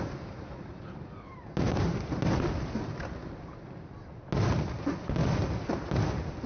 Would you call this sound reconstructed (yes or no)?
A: no